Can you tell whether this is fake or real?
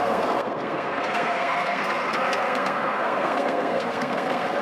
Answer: fake